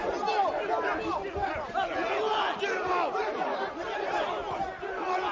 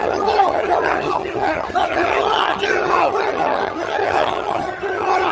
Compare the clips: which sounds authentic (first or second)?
first